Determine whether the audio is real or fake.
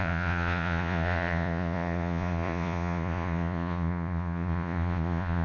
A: fake